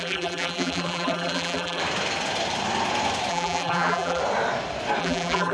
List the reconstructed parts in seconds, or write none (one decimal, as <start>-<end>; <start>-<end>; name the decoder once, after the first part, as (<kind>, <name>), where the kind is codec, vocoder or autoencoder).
0.0-1.8 (vocoder, BigVGAN v2); 3.3-4.2; 5.0-5.5